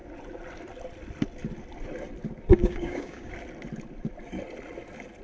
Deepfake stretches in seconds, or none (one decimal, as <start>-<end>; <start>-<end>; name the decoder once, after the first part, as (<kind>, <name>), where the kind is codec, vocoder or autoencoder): 2.6-3.3 (codec, DAC)